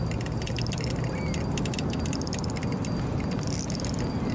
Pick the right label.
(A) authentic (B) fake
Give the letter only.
A